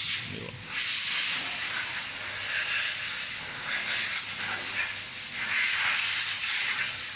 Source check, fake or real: real